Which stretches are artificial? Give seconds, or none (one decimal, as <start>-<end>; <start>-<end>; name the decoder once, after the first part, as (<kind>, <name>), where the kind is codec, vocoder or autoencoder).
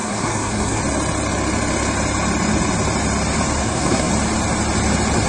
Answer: 0.0-0.8 (codec, SNAC); 3.6-4.1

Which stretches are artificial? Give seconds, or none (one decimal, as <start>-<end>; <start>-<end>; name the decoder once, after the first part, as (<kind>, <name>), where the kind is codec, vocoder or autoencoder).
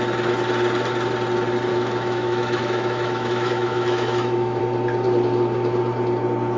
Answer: 1.7-4.6 (autoencoder, DAC-VAE)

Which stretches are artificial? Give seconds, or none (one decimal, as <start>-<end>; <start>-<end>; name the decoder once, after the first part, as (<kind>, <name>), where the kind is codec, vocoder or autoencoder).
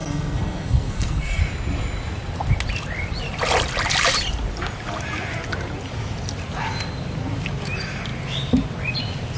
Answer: 0.0-1.4 (codec, SNAC)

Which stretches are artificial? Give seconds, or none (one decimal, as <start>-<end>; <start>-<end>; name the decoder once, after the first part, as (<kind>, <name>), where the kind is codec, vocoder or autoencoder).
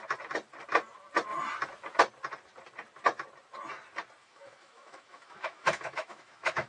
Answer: 4.2-6.7 (autoencoder, DAC-VAE)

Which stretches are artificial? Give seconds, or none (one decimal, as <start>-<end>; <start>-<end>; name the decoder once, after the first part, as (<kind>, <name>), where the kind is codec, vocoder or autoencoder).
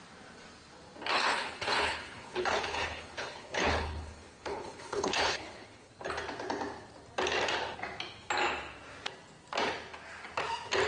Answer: 1.1-5.9 (codec, HILCodec)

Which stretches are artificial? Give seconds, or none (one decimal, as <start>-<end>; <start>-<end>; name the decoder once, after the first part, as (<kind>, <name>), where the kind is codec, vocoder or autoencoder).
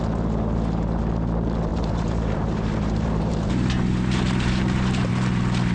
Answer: 1.7-5.1 (vocoder, BigVGAN v2)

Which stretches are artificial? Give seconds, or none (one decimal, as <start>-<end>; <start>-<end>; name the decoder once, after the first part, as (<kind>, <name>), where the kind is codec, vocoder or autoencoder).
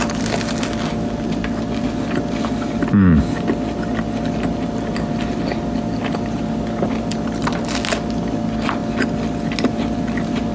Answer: none